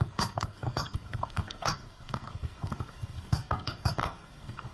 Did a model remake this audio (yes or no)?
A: yes